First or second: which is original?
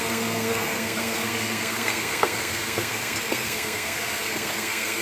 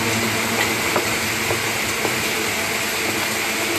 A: second